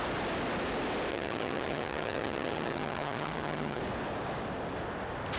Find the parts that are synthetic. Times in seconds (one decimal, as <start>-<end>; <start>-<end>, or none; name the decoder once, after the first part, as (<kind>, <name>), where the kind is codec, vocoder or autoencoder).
1.1-3.8 (vocoder, HiFi-GAN)